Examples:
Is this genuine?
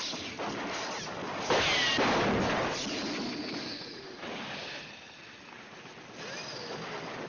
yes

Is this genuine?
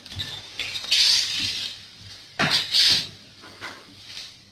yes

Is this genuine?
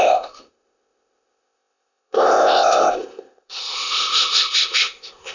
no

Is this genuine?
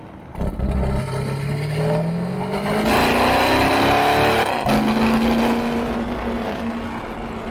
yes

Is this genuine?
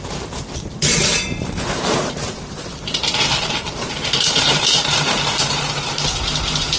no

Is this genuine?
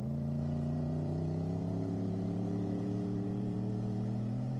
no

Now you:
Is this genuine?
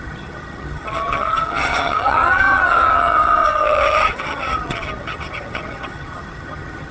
no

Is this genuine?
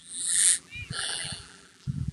no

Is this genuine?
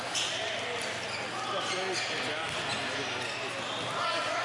yes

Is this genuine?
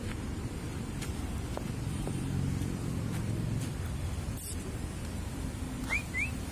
no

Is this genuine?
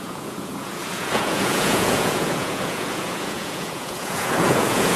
no